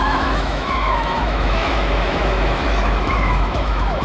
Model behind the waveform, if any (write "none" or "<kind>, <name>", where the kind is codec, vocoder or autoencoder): autoencoder, DAC-VAE